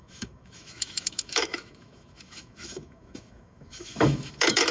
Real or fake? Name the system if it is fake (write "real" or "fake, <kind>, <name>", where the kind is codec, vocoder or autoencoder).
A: fake, autoencoder, DAC-VAE